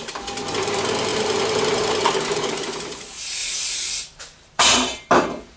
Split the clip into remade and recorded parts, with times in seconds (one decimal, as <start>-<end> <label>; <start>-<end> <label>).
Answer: 0.0-1.1 recorded; 1.1-1.9 remade; 1.9-3.4 recorded; 3.4-5.1 remade; 5.1-5.6 recorded